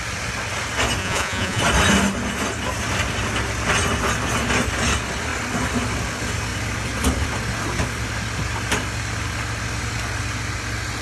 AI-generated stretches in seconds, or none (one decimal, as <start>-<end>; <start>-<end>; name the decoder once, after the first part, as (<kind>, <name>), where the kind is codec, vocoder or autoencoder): 1.0-1.6 (vocoder, Vocos)